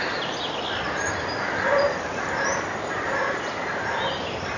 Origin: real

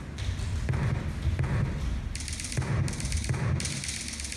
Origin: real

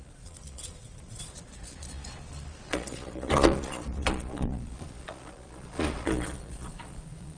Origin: fake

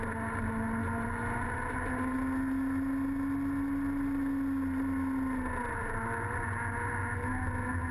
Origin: real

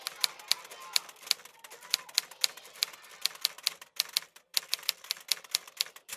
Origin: real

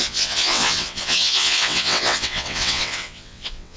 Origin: fake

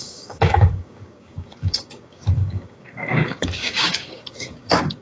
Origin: fake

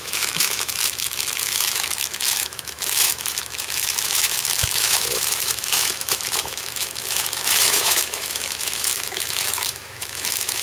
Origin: fake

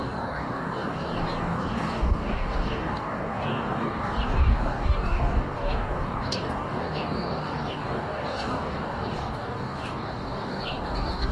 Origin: fake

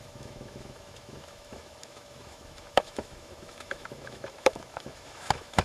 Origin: fake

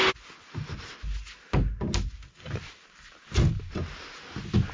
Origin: real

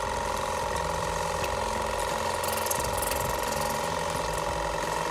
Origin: real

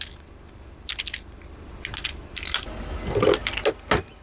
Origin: real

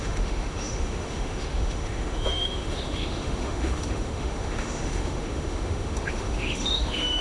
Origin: fake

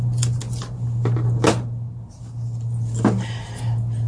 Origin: real